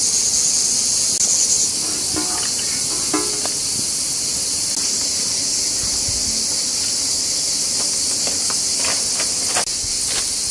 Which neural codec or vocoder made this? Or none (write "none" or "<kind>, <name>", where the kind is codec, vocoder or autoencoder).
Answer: none